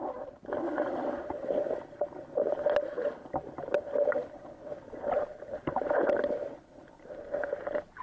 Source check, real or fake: real